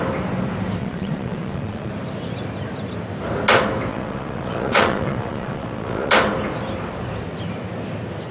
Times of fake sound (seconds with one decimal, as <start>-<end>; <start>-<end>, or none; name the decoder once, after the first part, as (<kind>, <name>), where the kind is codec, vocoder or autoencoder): 0.8-1.9 (vocoder, Vocos); 3.9-6.1